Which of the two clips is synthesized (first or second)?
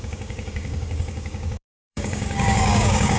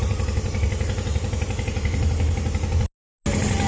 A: first